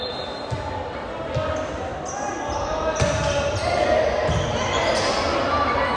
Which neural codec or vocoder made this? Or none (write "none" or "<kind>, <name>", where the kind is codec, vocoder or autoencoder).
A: none